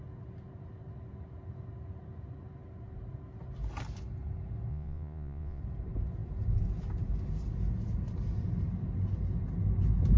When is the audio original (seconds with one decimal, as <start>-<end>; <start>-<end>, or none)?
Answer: 0.0-4.7; 5.6-10.2

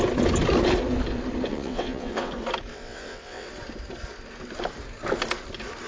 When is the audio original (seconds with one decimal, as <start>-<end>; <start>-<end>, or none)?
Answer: 0.0-1.5; 2.3-2.7; 3.5-5.9

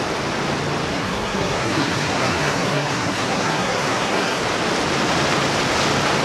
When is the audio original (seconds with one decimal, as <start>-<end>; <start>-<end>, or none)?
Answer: 0.0-0.9; 4.4-6.2

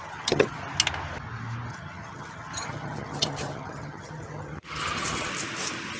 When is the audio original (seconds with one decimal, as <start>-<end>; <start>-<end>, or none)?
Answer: 0.6-1.7; 5.3-6.0

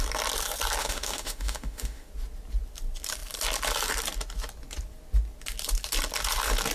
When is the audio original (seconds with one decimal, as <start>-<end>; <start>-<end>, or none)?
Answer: 0.0-0.8; 2.1-6.7

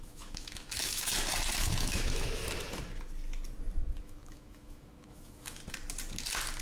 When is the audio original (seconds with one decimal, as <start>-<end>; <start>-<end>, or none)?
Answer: 1.1-1.6; 2.4-4.0; 5.6-6.6

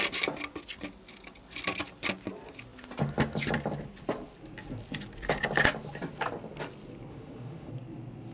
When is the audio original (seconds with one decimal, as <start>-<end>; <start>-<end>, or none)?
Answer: 0.0-7.1; 7.7-8.3